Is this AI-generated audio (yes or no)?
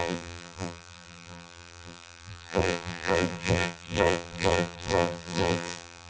yes